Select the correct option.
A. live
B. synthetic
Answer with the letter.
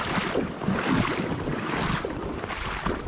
A